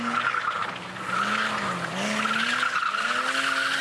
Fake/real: real